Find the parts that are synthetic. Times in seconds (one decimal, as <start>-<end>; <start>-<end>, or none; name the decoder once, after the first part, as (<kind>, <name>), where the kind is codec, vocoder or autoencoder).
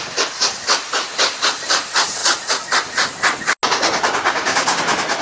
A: 4.1-4.8 (codec, DAC)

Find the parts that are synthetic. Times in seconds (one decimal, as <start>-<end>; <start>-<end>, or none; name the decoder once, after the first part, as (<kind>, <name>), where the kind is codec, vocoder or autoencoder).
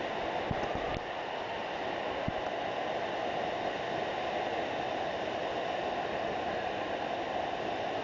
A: none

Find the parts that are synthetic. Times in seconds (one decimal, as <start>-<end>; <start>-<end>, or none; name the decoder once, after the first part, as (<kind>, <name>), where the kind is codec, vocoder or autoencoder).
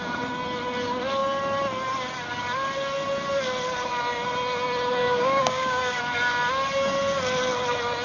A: 5.0-6.0 (codec, DAC)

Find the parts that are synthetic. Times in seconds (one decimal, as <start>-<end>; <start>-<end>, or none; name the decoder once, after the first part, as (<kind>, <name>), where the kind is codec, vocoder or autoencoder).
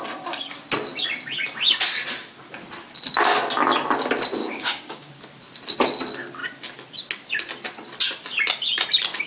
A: 4.4-5.1 (codec, DAC)